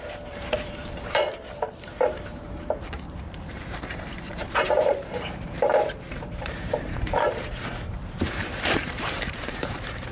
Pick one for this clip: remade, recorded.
remade